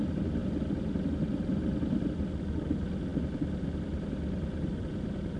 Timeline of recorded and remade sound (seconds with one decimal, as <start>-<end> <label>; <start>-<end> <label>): 0.0-0.4 remade; 0.4-2.1 recorded; 2.1-5.4 remade